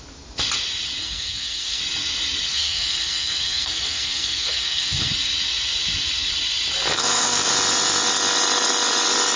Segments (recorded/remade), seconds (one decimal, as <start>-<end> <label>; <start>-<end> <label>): 0.0-1.0 recorded; 1.0-1.8 remade; 1.8-2.5 recorded; 2.5-5.1 remade; 5.1-6.9 recorded; 6.9-7.5 remade; 7.5-9.4 recorded